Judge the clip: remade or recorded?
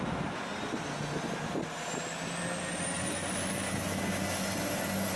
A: recorded